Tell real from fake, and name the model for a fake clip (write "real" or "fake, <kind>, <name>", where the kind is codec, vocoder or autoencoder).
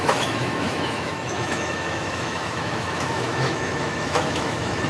fake, autoencoder, DAC-VAE